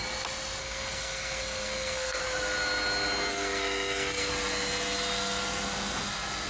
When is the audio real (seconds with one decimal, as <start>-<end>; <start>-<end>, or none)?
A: 0.0-0.6; 2.2-3.3; 4.3-6.5